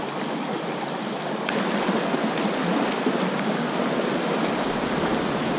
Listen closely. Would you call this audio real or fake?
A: real